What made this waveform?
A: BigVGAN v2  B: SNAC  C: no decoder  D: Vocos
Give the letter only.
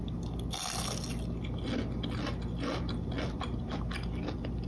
C